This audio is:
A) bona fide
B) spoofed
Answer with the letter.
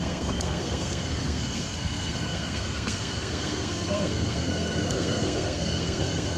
B